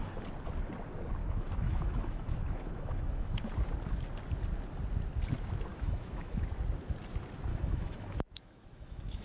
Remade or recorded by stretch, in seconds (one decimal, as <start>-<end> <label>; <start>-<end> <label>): 0.0-1.2 recorded; 1.2-3.5 remade; 3.5-5.7 recorded; 5.7-6.5 remade; 6.5-7.5 recorded; 7.5-9.2 remade